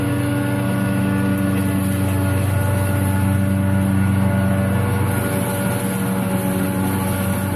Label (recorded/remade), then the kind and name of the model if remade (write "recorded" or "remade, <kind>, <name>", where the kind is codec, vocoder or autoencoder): recorded